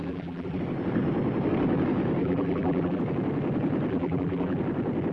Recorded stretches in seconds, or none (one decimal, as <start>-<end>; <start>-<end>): 0.6-2.2; 3.0-3.9; 4.6-5.1